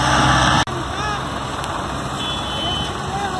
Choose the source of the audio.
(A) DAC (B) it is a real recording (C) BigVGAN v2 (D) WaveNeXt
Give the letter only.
B